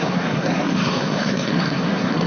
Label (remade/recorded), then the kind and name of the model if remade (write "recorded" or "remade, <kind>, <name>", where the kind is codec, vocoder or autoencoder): remade, codec, SNAC